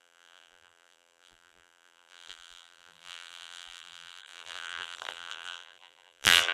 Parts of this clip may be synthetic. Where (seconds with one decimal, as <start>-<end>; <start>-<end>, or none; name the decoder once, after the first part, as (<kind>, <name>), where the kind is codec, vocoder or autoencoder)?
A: 0.0-6.5 (vocoder, BigVGAN v2)